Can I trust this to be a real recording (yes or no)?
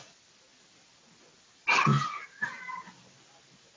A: yes